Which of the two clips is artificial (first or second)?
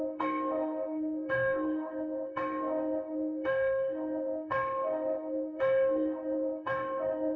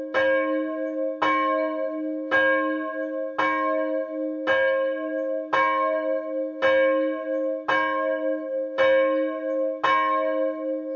first